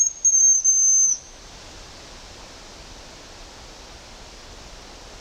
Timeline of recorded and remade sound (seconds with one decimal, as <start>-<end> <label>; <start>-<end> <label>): 0.0-0.8 recorded; 0.8-1.4 remade; 1.4-5.2 recorded